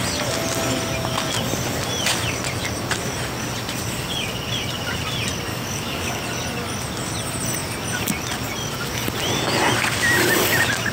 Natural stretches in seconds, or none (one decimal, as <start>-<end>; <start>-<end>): 0.0-5.5; 6.2-10.9